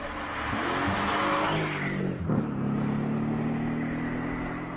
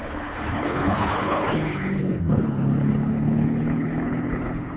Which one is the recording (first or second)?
first